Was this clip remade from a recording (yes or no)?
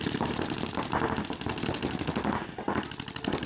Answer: no